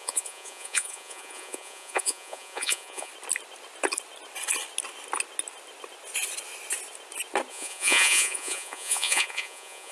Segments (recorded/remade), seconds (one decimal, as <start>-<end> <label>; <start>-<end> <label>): 0.0-3.1 remade; 3.1-7.5 recorded; 7.5-9.9 remade